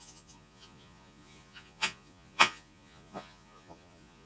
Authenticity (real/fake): fake